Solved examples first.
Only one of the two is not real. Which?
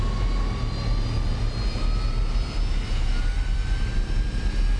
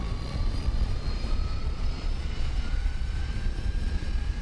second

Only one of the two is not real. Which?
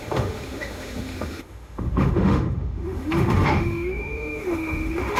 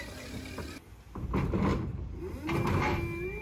first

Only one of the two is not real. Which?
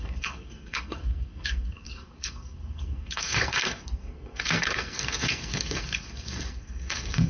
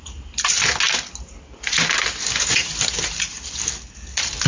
first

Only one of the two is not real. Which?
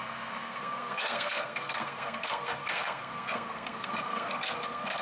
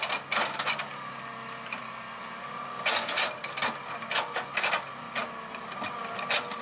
first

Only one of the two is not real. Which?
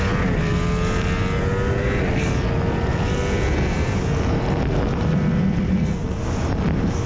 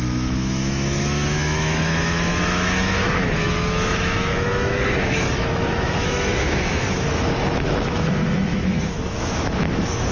second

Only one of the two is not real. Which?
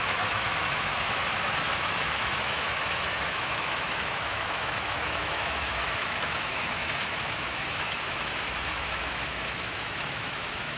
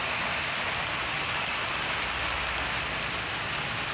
first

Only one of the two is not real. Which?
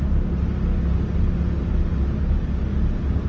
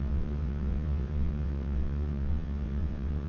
second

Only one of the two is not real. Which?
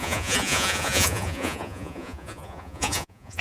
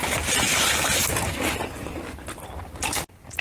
first